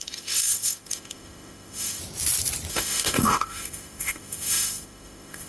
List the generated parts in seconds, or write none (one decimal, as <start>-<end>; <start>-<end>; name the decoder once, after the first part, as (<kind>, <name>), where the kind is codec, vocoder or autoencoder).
0.0-2.0 (autoencoder, DAC-VAE); 2.7-5.5